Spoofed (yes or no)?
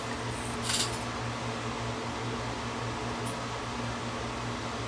no